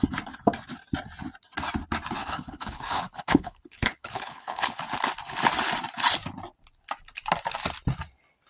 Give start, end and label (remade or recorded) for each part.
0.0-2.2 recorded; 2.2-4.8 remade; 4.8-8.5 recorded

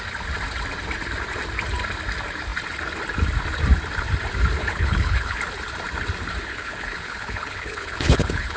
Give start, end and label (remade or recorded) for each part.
0.0-4.6 recorded; 4.6-5.4 remade; 5.4-6.4 recorded; 6.4-8.6 remade